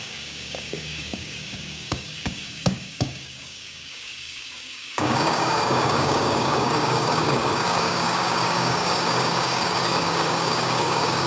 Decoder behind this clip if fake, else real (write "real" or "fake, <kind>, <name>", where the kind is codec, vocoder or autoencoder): fake, codec, DAC